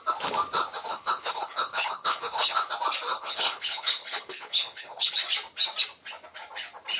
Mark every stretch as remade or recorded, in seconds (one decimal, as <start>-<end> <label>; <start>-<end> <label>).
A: 0.0-0.9 recorded; 0.9-2.7 remade; 2.7-3.1 recorded; 3.1-5.1 remade; 5.1-7.0 recorded